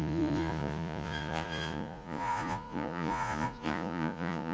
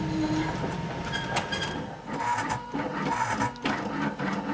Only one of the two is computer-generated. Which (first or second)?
first